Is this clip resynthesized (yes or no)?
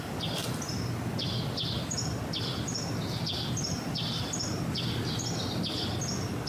no